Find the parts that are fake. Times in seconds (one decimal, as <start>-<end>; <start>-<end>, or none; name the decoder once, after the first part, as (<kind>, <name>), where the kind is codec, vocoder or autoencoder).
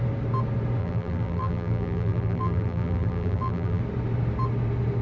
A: 0.8-3.8 (vocoder, BigVGAN v2)